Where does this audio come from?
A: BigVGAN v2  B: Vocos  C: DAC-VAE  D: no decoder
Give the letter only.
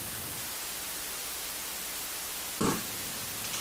D